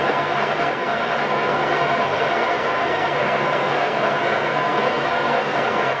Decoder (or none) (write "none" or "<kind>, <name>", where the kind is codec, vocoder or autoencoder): codec, SNAC